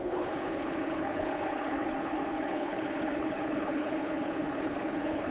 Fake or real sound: fake